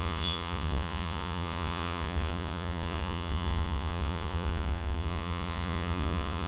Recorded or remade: remade